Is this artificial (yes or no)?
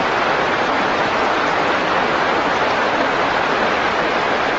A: yes